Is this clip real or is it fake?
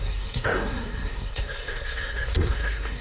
fake